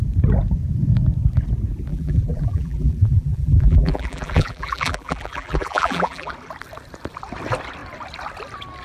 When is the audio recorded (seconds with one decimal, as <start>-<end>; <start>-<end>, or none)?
0.0-1.9; 6.3-8.8